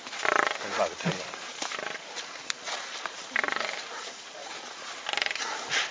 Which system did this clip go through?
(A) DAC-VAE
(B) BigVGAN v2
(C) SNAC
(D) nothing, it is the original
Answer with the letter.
D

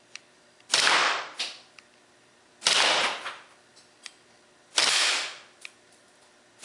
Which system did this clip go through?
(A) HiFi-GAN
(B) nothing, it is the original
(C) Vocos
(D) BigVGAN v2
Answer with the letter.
D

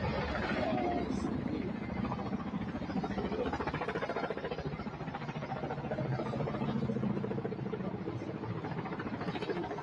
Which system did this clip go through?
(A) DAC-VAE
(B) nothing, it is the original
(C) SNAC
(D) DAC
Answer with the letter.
B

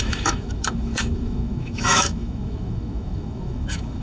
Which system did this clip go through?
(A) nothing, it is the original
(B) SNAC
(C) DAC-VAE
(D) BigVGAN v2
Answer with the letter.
C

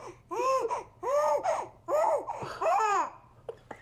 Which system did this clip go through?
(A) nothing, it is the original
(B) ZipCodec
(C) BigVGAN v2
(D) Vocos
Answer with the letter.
C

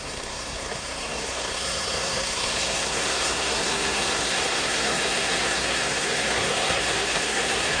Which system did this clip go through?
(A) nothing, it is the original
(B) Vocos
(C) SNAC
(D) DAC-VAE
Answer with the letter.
C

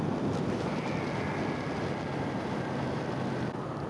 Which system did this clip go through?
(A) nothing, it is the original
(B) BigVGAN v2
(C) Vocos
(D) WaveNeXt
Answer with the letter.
A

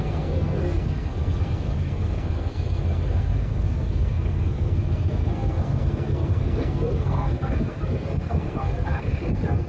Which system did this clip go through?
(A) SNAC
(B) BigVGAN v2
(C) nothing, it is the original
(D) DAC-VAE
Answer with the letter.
A